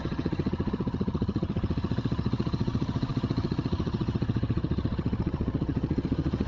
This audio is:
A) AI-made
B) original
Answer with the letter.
A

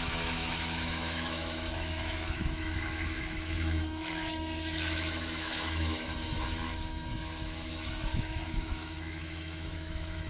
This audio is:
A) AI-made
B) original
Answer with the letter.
A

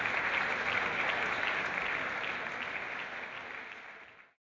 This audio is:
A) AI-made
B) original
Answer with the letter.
B